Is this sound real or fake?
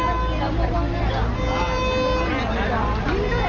real